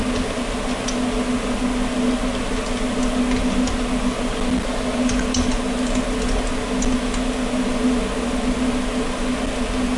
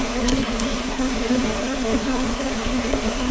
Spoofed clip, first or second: second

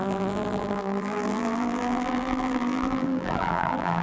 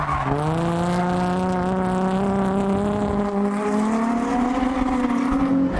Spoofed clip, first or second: first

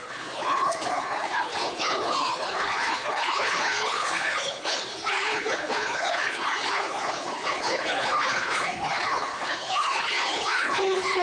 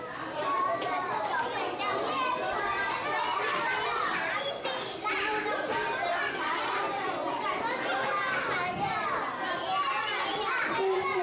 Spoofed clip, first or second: first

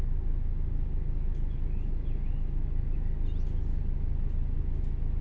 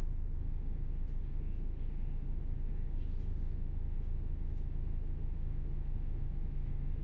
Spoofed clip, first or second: second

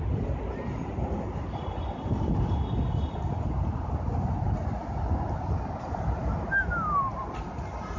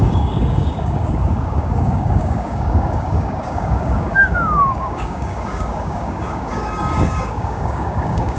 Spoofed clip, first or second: second